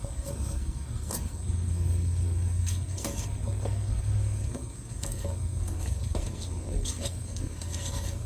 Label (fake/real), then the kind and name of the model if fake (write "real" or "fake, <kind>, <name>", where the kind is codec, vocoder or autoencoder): fake, codec, SNAC